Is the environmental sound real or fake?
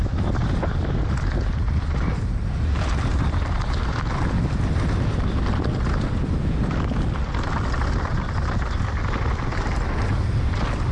real